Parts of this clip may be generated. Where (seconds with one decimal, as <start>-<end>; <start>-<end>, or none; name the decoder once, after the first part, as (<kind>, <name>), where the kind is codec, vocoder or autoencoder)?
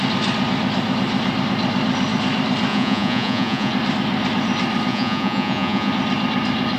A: 2.7-3.7 (vocoder, Vocos); 4.9-5.9